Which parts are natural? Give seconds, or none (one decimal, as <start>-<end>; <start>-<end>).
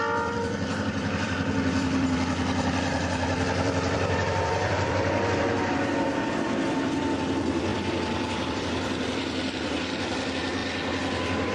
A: 10.6-11.5